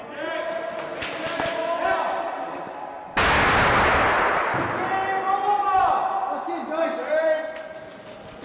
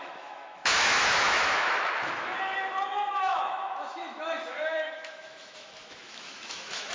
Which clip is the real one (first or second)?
first